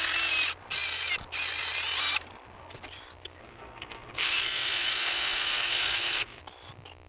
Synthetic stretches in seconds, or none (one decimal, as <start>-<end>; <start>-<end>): 3.4-6.4